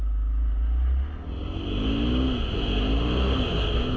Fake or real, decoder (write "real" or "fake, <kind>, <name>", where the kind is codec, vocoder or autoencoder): real